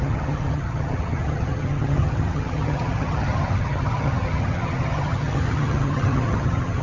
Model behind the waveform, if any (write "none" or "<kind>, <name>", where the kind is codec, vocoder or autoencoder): vocoder, HiFi-GAN